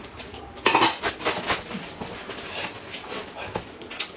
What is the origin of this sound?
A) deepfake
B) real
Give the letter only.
B